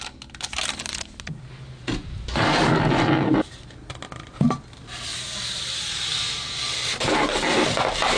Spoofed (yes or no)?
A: no